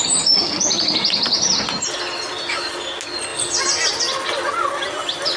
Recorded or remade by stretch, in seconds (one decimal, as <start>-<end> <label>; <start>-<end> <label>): 0.0-5.4 recorded

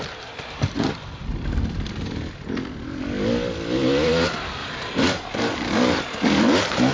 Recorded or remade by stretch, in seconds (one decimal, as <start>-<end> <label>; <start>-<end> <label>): 0.0-4.6 recorded; 4.6-6.9 remade